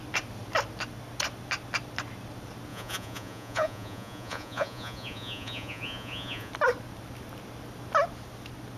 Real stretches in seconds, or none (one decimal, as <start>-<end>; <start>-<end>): 0.0-2.7; 6.5-8.8